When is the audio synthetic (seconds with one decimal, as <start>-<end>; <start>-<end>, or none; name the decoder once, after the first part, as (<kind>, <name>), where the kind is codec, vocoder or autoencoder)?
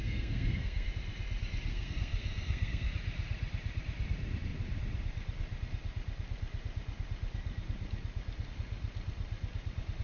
0.0-0.9 (codec, SNAC); 1.7-2.9